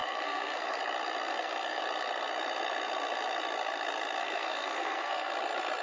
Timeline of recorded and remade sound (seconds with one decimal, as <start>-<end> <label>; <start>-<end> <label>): 0.0-0.8 remade; 0.8-1.3 recorded; 1.3-1.8 remade; 1.8-4.2 recorded; 4.2-5.3 remade; 5.3-5.8 recorded